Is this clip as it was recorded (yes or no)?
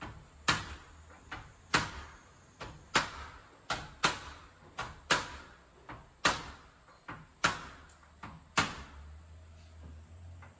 yes